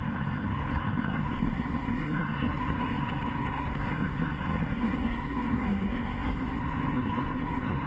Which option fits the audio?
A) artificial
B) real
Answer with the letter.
A